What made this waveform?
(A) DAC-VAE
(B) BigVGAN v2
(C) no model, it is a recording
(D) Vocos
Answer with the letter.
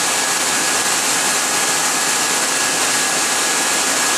C